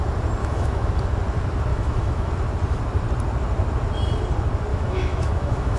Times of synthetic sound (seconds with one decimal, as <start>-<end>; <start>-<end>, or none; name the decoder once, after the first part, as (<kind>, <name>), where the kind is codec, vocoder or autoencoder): 0.4-0.9 (autoencoder, DAC-VAE); 1.7-2.3; 4.7-5.8